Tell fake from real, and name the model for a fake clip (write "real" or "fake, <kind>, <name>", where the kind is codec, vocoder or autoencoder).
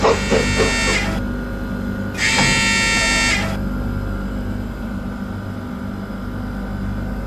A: real